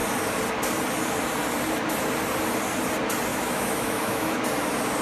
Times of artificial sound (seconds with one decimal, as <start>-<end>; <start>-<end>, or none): 3.3-4.4